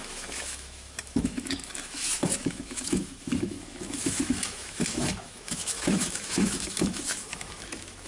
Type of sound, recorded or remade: remade